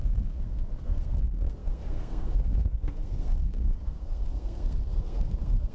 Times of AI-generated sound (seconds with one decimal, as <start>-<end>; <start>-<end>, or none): 0.0-5.7